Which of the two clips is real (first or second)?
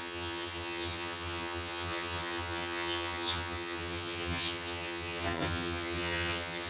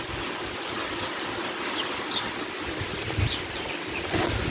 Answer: second